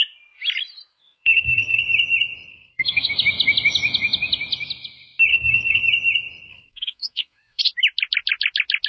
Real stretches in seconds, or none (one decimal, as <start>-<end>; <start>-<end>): 0.0-0.9; 1.8-2.5; 3.1-5.3; 5.8-6.5; 7.6-8.9